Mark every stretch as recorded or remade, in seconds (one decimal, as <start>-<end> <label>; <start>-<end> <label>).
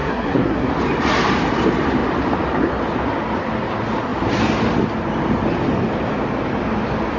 0.0-0.7 remade; 0.7-7.2 recorded